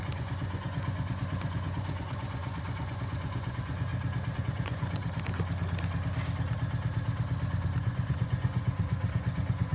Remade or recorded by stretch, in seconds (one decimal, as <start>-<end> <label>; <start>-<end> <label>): 0.0-3.9 remade; 3.9-4.4 recorded; 4.4-5.0 remade; 5.0-7.8 recorded; 7.8-9.7 remade